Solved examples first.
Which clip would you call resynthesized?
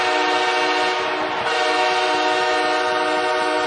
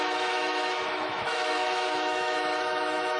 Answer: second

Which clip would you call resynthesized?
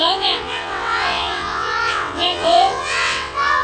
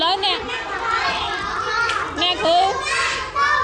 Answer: first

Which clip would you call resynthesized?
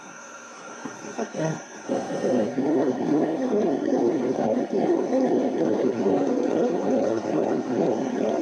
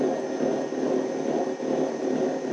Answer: first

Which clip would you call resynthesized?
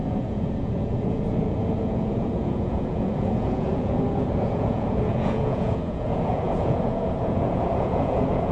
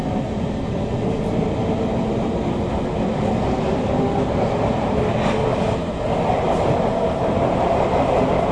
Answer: first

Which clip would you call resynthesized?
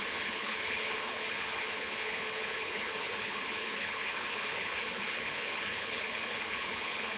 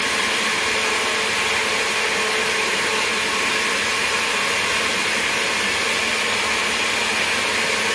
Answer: first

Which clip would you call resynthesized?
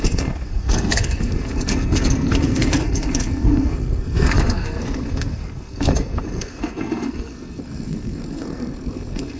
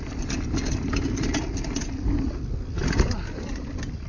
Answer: first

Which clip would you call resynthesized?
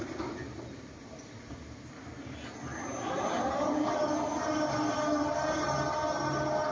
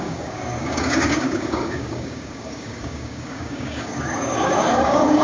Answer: second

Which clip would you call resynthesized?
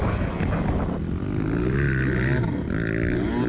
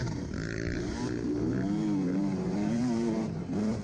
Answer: second